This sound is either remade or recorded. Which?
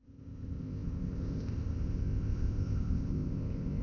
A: remade